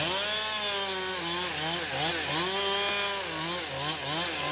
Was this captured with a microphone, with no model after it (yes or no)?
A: yes